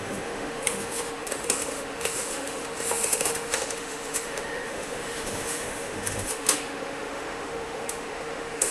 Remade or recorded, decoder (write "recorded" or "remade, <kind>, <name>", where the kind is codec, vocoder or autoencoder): remade, autoencoder, DAC-VAE